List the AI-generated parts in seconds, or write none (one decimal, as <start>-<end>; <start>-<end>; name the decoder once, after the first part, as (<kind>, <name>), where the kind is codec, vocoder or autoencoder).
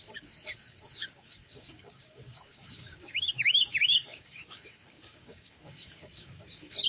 0.0-6.9 (codec, DAC)